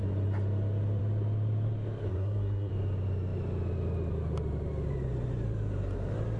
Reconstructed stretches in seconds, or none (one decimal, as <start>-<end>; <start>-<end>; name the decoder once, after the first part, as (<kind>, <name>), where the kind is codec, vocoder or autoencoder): 2.1-2.7 (codec, SNAC)